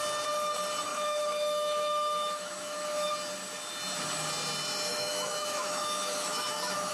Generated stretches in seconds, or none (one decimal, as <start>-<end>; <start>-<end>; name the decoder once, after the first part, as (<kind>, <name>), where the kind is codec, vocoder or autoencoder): 0.9-3.1 (autoencoder, DAC-VAE); 4.9-6.9